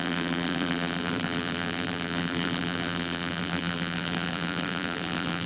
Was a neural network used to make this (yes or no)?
yes